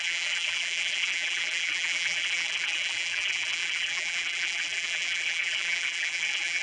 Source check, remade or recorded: remade